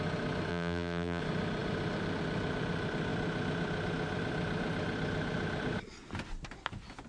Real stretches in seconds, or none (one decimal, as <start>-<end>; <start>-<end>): 0.0-0.5; 1.2-7.1